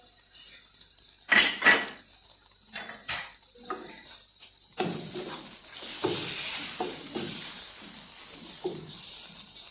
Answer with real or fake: real